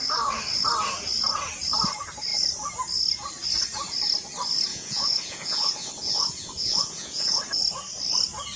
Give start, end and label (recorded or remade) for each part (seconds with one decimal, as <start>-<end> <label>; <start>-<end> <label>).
0.0-4.7 recorded; 4.7-7.4 remade; 7.4-8.6 recorded